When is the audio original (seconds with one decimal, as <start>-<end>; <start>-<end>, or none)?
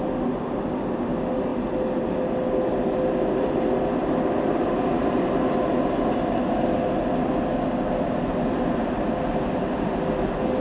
0.0-10.6